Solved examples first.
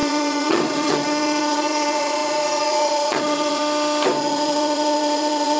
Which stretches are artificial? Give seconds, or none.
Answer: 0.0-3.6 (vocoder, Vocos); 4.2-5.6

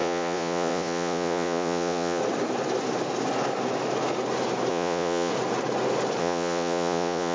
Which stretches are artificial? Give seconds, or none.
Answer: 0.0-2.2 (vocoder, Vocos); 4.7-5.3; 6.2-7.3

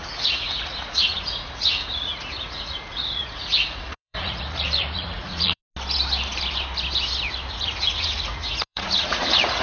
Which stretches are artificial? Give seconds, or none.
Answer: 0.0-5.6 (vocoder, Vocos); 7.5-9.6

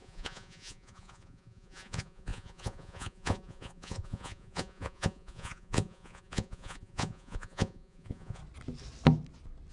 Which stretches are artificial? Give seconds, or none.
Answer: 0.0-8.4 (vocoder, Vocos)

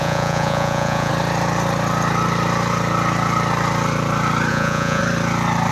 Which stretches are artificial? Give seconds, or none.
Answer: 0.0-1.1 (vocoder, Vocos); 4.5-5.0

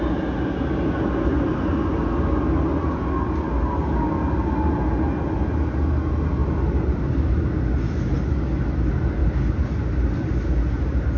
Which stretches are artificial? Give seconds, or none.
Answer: none